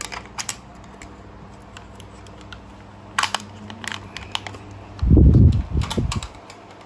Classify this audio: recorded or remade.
recorded